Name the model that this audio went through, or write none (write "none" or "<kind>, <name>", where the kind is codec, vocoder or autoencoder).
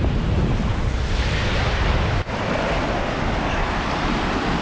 none